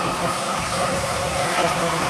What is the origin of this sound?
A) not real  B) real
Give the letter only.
A